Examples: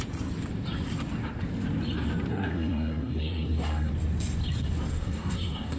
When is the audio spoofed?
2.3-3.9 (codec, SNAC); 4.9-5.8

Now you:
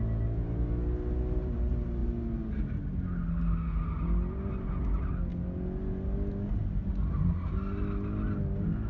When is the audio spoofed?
none

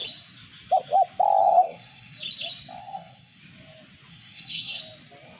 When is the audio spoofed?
1.4-2.2 (codec, SNAC); 2.8-3.4; 4.1-4.8